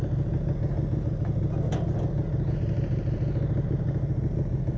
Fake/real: real